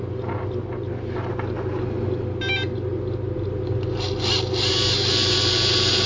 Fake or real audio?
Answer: real